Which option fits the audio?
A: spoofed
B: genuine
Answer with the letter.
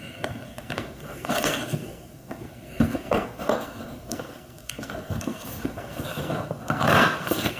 A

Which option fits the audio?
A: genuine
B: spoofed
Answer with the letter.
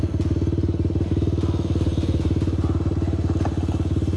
A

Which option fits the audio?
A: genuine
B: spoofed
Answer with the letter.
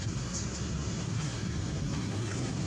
B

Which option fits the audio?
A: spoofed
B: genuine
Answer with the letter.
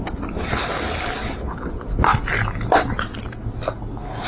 B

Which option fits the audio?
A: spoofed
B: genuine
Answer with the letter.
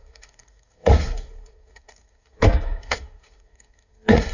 A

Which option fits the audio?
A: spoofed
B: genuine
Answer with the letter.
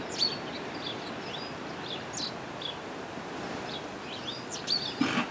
B